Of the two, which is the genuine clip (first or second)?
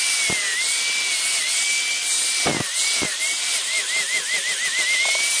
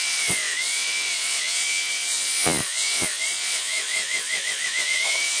first